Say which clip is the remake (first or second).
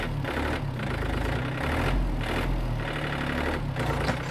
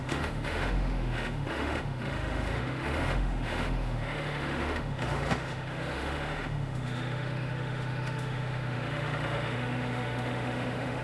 second